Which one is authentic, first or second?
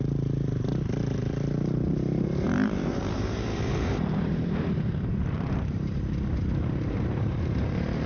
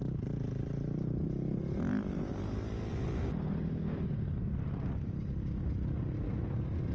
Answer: second